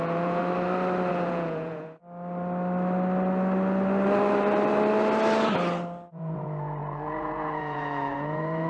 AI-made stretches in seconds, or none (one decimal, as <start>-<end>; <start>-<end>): 0.0-0.4; 1.1-2.0; 6.1-8.7